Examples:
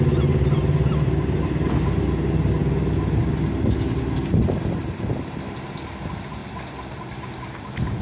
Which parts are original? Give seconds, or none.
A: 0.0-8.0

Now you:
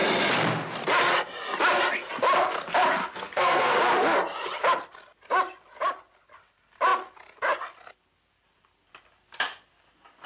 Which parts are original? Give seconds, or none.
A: 0.0-3.0; 3.8-10.3

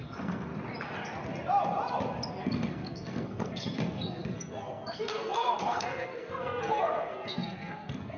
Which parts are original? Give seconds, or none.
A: 0.5-2.3

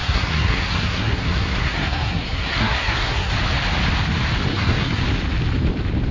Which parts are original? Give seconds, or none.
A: 3.3-4.5; 5.0-6.1

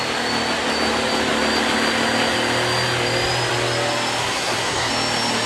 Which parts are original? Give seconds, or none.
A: 0.0-4.2; 4.9-5.5

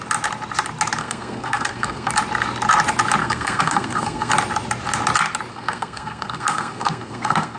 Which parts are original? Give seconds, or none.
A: 0.0-1.0; 2.1-3.2; 4.3-5.5

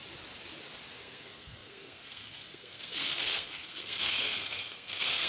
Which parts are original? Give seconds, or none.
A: 0.0-1.0

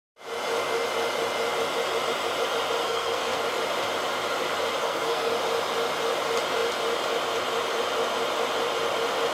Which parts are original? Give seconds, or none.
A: 0.0-2.8; 3.4-4.8; 5.3-9.3